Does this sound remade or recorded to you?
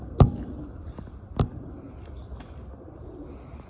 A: recorded